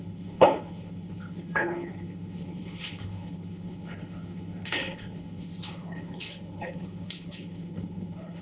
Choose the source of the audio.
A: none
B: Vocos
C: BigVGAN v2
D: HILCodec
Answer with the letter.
D